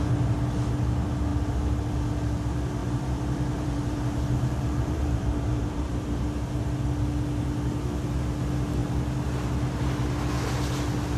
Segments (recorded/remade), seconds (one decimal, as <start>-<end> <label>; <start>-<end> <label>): 0.0-2.8 recorded; 2.8-6.2 remade; 6.2-11.2 recorded